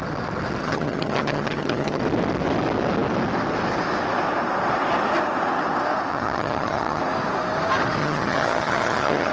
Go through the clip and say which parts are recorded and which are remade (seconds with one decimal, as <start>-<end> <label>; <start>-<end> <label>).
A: 0.0-0.6 recorded; 0.6-2.0 remade; 2.0-6.1 recorded; 6.1-7.0 remade; 7.0-8.0 recorded; 8.0-9.3 remade